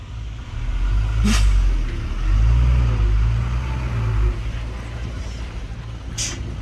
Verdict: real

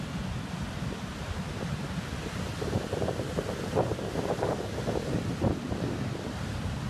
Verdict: real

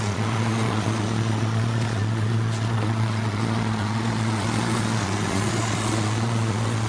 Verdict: fake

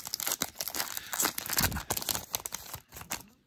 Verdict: real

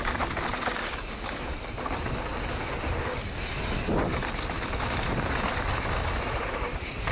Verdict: real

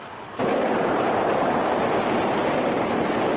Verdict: fake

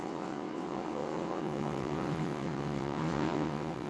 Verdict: fake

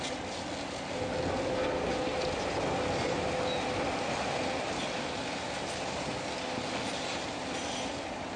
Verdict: real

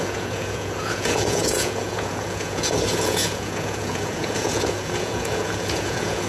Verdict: fake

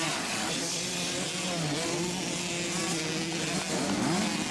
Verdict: real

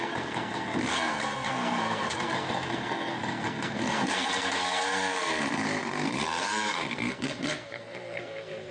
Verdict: fake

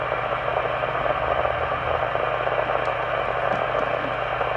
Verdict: real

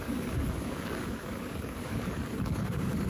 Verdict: fake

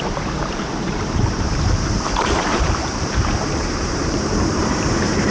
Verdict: fake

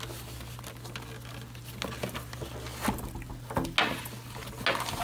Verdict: real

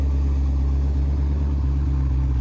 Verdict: real